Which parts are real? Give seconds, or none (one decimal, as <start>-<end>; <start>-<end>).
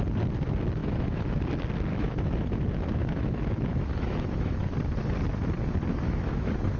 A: 0.0-0.8; 1.5-1.9; 4.7-5.9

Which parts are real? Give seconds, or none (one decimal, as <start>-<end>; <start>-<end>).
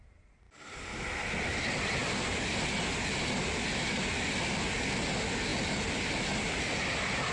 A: 0.0-7.3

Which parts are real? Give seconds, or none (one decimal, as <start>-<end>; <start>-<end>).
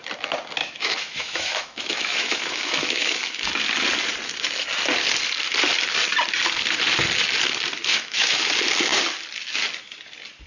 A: 0.0-0.6; 3.5-7.9; 8.5-10.5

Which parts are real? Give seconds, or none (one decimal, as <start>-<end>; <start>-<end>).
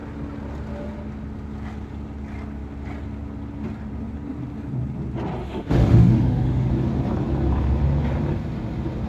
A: 0.0-5.4; 6.7-9.1